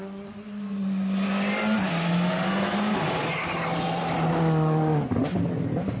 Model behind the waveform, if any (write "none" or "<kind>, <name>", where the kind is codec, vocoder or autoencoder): none